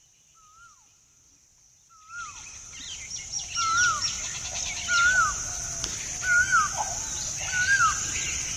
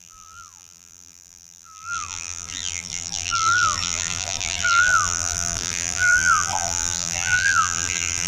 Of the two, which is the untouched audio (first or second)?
first